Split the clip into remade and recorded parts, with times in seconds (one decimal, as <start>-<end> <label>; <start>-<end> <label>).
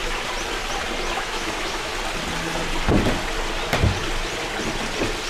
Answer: 0.0-1.1 recorded; 1.1-1.9 remade; 1.9-5.3 recorded